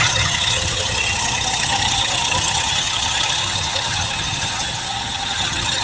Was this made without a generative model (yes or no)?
no